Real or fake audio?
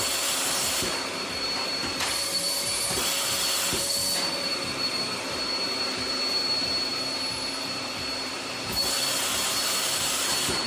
fake